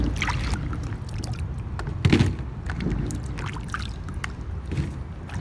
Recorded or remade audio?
recorded